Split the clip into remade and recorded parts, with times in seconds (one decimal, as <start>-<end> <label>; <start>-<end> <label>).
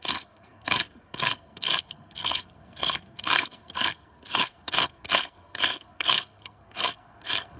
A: 0.0-7.6 remade